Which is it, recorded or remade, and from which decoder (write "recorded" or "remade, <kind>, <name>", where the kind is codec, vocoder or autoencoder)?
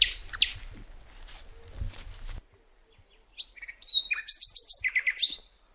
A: recorded